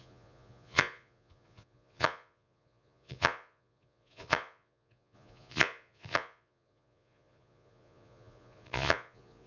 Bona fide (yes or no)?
no